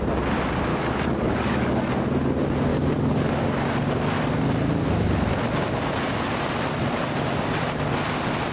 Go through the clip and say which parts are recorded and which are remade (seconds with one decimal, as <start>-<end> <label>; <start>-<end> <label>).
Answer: 0.0-0.7 recorded; 0.7-1.9 remade; 1.9-2.7 recorded; 2.7-3.3 remade; 3.3-8.5 recorded